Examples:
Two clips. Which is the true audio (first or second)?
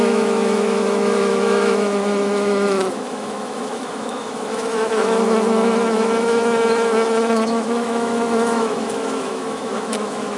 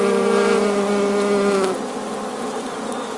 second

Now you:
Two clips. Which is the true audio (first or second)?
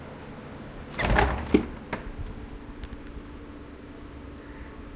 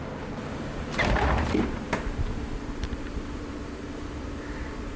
first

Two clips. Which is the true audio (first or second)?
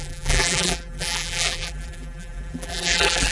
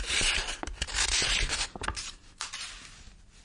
second